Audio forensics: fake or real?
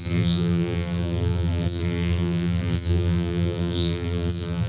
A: fake